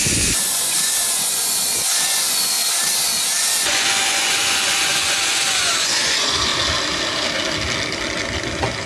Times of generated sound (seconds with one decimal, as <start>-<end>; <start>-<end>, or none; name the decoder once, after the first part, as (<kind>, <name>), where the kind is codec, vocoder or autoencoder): 0.0-2.6 (vocoder, Vocos); 3.4-6.5